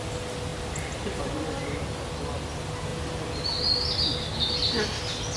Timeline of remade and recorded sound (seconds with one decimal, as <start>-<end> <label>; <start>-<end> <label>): 0.0-5.4 recorded